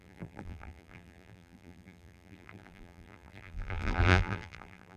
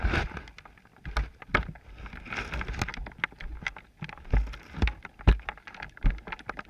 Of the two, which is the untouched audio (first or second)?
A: second